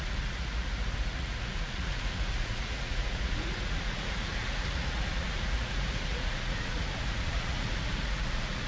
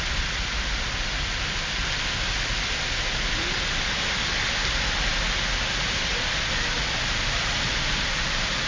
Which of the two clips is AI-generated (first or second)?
first